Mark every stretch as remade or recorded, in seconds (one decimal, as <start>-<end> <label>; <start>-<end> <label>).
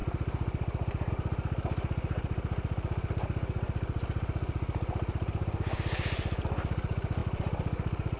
0.0-8.2 recorded